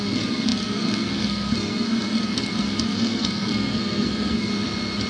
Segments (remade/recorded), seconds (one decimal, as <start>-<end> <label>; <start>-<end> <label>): 0.0-4.5 remade; 4.5-5.1 recorded